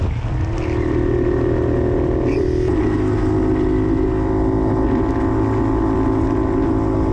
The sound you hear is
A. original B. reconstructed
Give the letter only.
A